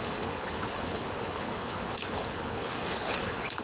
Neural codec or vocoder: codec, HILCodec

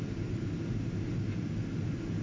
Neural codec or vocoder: none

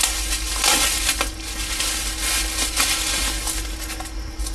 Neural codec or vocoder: none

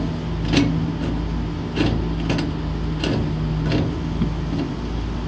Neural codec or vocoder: none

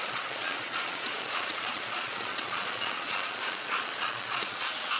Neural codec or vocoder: vocoder, Vocos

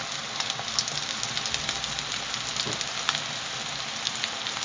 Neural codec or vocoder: none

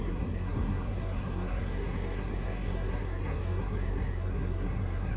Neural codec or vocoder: codec, SNAC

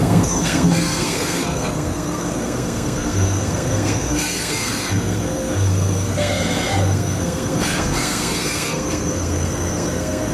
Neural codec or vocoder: codec, SNAC